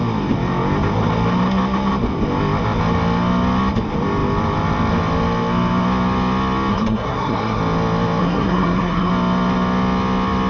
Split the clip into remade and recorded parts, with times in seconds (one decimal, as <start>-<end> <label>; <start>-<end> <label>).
0.0-6.7 recorded; 6.7-7.6 remade; 7.6-8.2 recorded; 8.2-9.1 remade; 9.1-10.5 recorded